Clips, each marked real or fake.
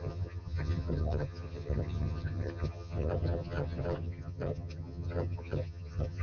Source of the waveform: fake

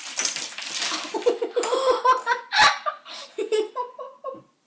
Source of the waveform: real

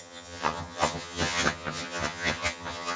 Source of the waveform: fake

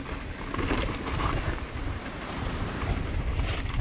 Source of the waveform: real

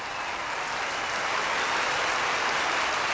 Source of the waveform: real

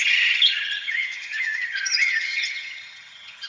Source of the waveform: fake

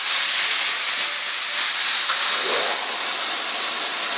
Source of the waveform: real